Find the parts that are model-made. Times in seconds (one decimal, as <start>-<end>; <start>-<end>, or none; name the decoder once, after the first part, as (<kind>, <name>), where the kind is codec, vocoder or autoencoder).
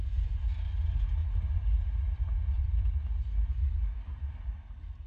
none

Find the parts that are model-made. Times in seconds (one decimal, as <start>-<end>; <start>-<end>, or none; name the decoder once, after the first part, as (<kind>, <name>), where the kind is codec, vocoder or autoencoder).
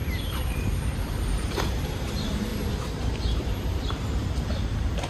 0.0-5.1 (vocoder, BigVGAN v2)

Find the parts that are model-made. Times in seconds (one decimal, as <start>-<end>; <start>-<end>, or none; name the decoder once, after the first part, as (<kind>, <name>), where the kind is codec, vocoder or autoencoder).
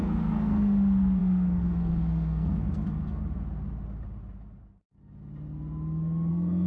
0.0-3.2 (codec, SNAC); 6.3-6.7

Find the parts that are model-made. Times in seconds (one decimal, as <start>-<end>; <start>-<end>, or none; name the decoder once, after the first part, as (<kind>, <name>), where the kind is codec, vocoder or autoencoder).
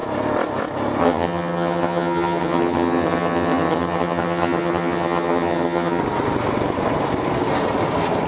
1.0-6.0 (vocoder, HiFi-GAN)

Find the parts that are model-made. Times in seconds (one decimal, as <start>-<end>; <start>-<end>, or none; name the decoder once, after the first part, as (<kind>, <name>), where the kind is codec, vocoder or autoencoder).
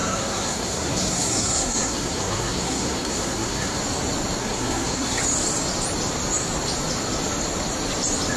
0.0-3.8 (codec, SNAC); 4.4-5.2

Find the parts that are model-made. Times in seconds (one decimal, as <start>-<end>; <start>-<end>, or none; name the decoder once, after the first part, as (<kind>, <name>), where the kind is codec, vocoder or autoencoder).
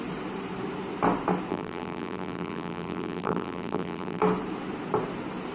1.5-4.2 (vocoder, BigVGAN v2)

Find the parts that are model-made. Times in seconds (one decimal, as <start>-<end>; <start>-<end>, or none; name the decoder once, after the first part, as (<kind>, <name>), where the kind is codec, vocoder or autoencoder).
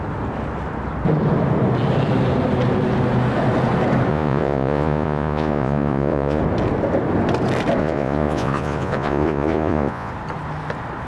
4.1-6.4 (vocoder, Vocos); 7.8-10.1